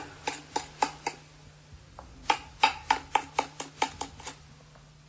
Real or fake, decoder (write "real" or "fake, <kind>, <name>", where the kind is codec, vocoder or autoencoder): real